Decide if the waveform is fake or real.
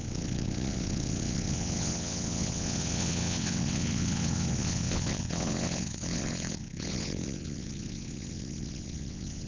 fake